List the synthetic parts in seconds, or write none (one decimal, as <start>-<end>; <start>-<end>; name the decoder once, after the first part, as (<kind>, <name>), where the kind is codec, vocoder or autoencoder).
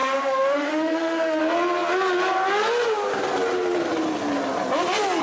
0.0-1.4 (autoencoder, DAC-VAE)